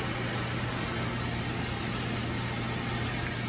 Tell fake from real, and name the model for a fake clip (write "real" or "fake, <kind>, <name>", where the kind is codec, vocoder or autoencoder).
real